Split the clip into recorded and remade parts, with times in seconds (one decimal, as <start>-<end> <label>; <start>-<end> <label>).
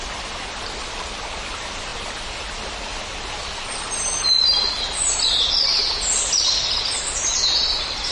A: 0.0-8.1 recorded